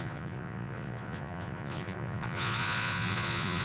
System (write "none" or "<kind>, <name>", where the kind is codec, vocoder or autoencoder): vocoder, Vocos